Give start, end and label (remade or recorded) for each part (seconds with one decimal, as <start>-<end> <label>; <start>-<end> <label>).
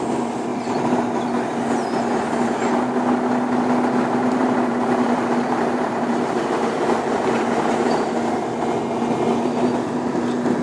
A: 0.0-0.5 recorded; 0.5-1.0 remade; 1.0-4.2 recorded; 4.2-8.2 remade; 8.2-10.6 recorded